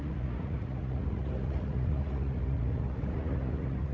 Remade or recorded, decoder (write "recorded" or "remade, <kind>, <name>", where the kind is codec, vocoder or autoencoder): remade, vocoder, Vocos